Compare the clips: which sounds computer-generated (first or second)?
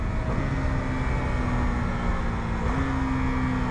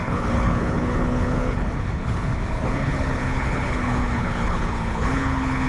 second